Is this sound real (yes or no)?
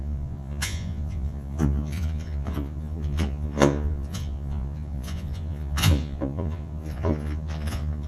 no